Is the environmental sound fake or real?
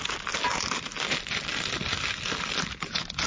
real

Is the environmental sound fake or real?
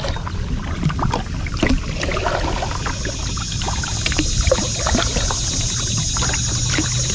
real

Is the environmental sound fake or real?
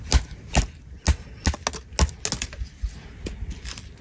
real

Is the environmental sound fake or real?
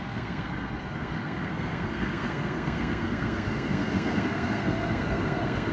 fake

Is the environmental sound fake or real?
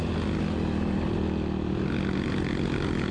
real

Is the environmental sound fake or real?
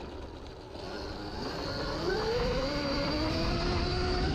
real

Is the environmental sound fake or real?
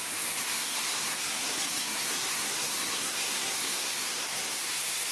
fake